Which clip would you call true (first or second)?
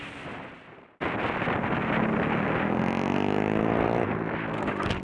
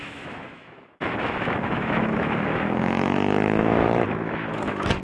first